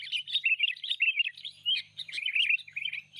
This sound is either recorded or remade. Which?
recorded